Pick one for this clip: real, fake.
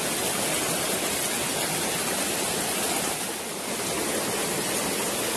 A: real